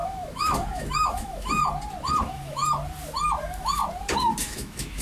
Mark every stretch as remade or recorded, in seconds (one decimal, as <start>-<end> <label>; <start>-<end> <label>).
0.0-1.6 remade; 1.6-2.2 recorded; 2.2-2.6 remade; 2.6-3.4 recorded; 3.4-3.8 remade; 3.8-4.4 recorded; 4.4-5.0 remade